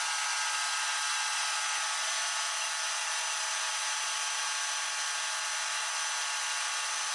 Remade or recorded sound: recorded